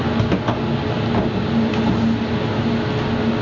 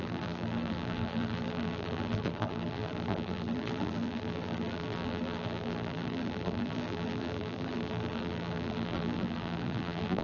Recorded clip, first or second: first